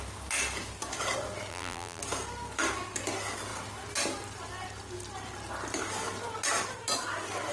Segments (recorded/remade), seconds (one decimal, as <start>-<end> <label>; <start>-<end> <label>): 0.0-1.5 recorded; 1.5-2.0 remade; 2.0-7.5 recorded

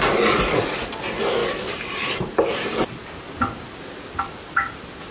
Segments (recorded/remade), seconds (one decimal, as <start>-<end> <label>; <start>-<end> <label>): 0.0-5.1 recorded

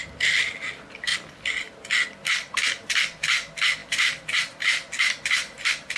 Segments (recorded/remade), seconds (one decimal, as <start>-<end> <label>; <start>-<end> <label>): 0.0-1.1 recorded; 1.1-1.8 remade; 1.8-3.8 recorded; 3.8-4.4 remade; 4.4-6.0 recorded

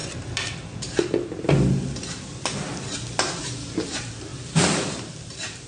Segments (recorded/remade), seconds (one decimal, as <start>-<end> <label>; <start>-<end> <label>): 0.0-3.4 recorded; 3.4-5.7 remade

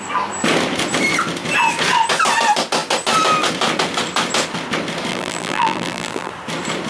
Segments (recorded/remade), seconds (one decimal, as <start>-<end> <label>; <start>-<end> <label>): 0.0-5.1 recorded; 5.1-6.3 remade; 6.3-6.9 recorded

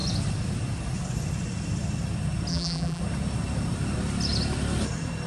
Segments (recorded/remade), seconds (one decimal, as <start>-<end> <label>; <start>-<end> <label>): 0.0-2.5 recorded; 2.5-3.0 remade; 3.0-5.3 recorded